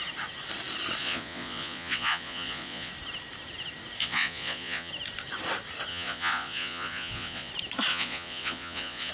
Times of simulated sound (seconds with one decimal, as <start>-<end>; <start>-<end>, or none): 1.0-2.9; 4.0-4.9; 5.9-7.5; 7.9-9.1